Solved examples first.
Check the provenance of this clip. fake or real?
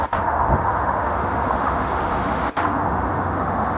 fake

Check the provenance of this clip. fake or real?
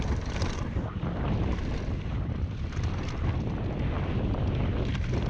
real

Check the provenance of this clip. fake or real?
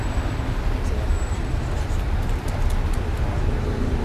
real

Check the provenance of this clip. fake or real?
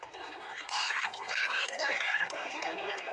fake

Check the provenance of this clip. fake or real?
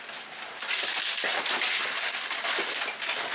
real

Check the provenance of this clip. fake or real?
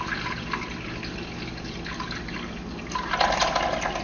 real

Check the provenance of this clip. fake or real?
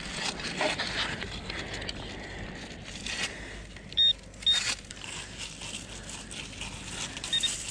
real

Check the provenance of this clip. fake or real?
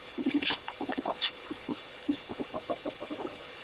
fake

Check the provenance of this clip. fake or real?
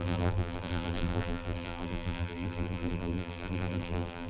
fake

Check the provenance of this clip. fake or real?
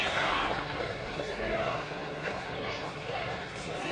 fake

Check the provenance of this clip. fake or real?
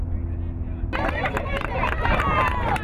real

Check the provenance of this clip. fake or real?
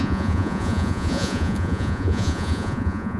fake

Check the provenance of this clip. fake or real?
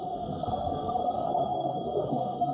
fake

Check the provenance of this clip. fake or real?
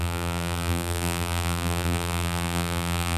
fake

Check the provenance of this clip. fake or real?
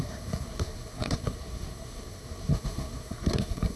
fake